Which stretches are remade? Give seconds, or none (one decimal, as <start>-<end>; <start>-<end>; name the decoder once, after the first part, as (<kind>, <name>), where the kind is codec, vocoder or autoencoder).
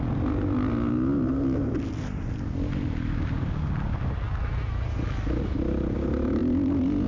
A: none